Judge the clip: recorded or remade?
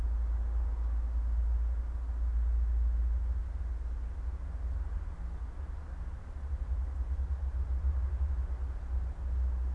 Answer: recorded